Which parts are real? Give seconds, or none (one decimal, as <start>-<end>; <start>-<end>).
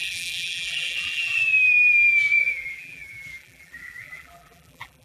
1.4-2.4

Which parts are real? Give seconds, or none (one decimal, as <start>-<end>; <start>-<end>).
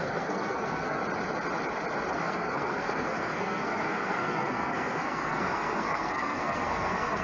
1.0-2.1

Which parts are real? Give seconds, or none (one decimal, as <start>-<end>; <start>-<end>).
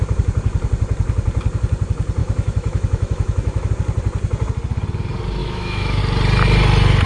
0.0-2.2; 3.7-5.4; 6.0-7.1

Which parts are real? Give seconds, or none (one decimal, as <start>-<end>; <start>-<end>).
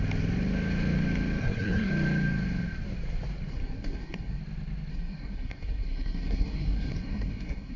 0.0-1.4; 1.9-3.5; 4.4-4.9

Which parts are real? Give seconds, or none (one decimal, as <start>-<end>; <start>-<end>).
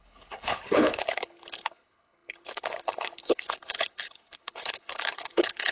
none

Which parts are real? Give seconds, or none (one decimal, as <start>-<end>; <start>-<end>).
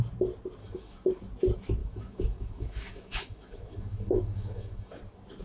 0.0-0.6; 1.1-1.8; 5.0-5.4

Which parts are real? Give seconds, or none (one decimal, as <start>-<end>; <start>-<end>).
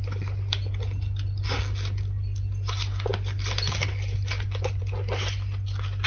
0.0-6.1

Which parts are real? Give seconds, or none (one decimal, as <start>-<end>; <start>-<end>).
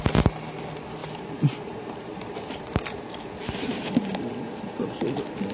0.0-1.0; 4.3-5.5